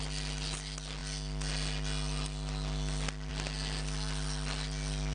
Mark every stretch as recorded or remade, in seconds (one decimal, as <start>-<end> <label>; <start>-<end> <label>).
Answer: 0.0-5.1 recorded